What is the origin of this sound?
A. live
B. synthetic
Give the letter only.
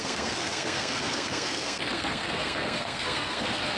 B